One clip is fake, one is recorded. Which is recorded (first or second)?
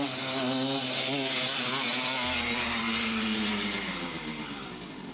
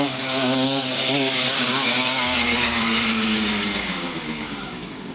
first